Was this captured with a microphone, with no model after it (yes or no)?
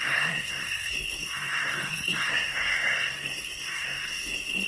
no